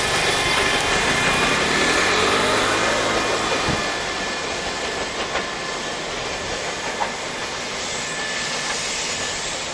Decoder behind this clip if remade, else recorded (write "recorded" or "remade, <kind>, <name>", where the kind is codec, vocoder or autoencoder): recorded